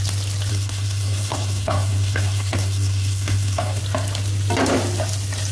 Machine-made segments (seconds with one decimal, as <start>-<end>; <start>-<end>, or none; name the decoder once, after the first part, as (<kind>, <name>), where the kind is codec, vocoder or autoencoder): 0.5-3.8 (codec, SNAC)